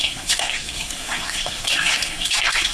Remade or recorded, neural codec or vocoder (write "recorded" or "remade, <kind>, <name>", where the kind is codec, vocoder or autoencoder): remade, codec, SNAC